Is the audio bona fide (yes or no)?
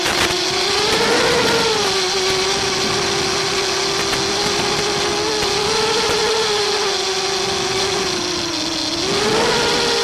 yes